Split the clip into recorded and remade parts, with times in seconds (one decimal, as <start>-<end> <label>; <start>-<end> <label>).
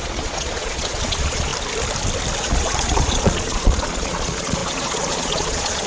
0.0-1.5 remade; 1.5-2.4 recorded; 2.4-5.9 remade